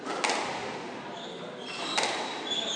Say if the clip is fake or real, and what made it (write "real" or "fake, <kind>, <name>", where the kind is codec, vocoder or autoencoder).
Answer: real